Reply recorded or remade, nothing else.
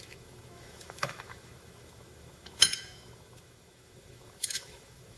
remade